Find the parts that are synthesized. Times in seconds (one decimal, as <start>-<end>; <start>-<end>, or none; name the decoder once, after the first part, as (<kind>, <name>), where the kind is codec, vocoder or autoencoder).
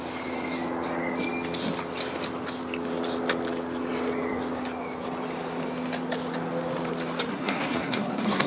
7.3-8.5 (codec, SNAC)